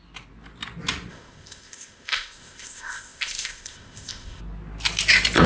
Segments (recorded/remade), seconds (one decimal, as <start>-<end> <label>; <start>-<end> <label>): 0.0-1.1 recorded; 1.1-4.4 remade; 4.4-5.5 recorded

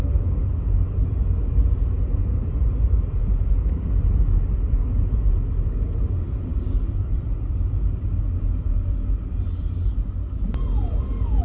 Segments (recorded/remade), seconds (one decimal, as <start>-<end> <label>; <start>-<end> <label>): 0.0-2.2 recorded; 2.2-3.2 remade; 3.2-11.4 recorded